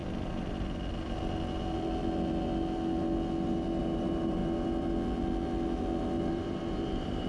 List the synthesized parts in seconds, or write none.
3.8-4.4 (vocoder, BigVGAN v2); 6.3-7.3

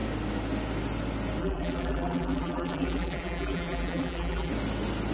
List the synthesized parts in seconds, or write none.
1.4-4.5 (vocoder, BigVGAN v2)

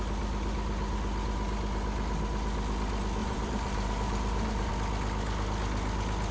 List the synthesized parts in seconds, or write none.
3.2-4.7 (vocoder, BigVGAN v2)

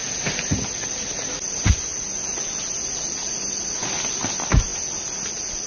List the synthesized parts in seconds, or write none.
none

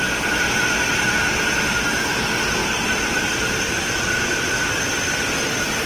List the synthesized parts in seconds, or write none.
2.6-4.6 (vocoder, BigVGAN v2)